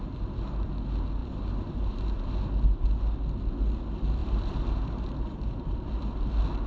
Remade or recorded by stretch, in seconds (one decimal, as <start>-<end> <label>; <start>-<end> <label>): 0.0-1.2 recorded; 1.2-1.7 remade; 1.7-4.2 recorded; 4.2-5.9 remade; 5.9-6.7 recorded